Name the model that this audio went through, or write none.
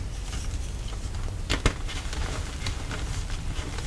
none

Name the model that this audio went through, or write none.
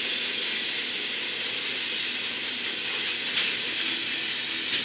none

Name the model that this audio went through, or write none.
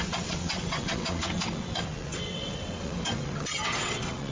vocoder, WaveNeXt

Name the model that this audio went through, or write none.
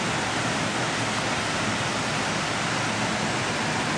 none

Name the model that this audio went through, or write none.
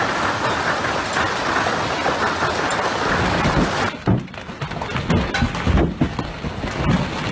none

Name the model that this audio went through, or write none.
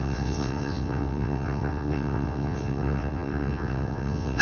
vocoder, WaveNeXt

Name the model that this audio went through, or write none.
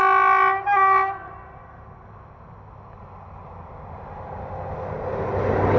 none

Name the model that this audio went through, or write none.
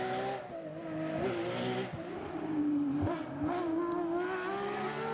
none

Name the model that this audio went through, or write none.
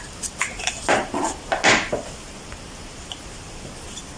none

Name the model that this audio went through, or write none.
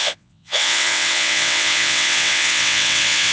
vocoder, WaveNeXt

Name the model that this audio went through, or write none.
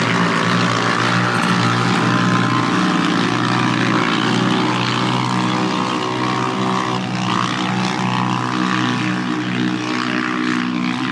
none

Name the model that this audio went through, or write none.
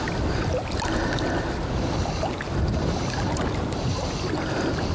none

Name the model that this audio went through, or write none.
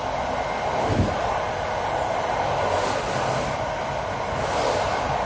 none